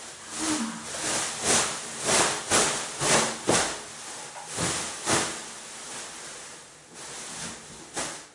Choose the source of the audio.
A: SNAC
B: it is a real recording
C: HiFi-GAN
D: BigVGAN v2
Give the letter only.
B